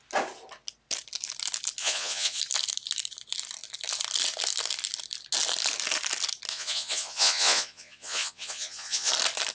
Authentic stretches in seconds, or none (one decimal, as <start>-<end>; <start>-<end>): 0.0-1.8; 2.4-6.5; 9.1-9.5